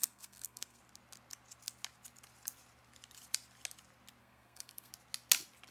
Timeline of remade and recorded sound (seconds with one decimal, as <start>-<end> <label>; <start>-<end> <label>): 0.0-0.8 remade; 0.8-4.2 recorded; 4.2-4.9 remade; 4.9-5.7 recorded